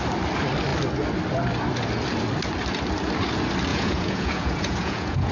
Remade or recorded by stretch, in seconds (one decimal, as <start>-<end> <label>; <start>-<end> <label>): 0.0-3.7 recorded; 3.7-5.3 remade